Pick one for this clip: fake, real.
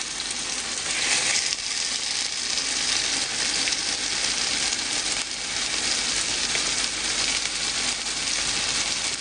real